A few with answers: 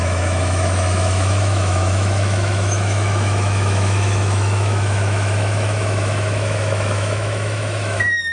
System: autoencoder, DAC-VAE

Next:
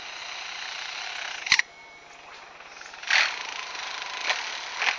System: none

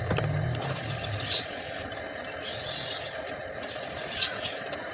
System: none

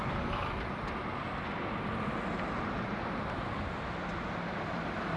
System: none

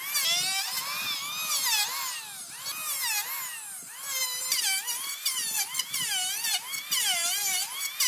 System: none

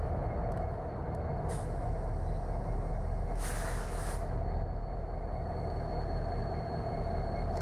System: autoencoder, DAC-VAE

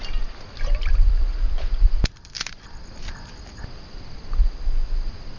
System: none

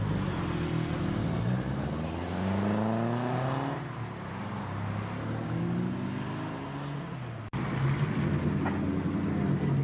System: none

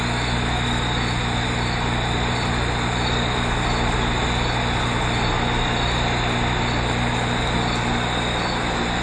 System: none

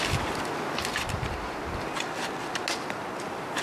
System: none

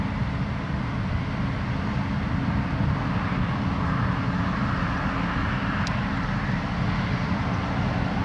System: none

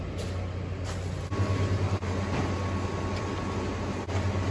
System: none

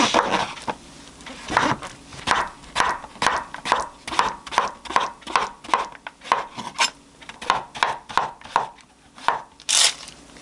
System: none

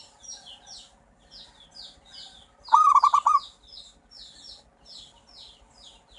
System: none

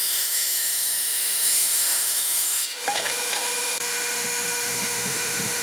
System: autoencoder, DAC-VAE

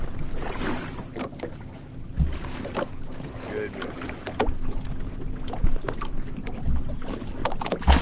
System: none